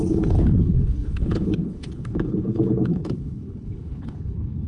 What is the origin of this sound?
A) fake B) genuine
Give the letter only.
A